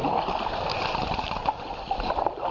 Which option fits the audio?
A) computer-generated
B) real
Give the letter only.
B